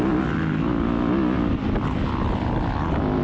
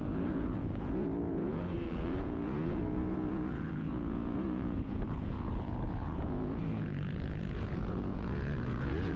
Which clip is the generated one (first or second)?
second